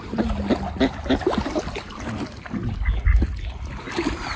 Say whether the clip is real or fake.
real